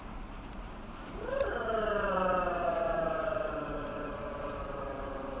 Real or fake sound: fake